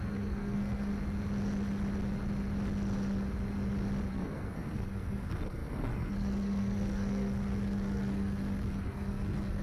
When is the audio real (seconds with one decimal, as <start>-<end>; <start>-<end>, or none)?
0.9-4.1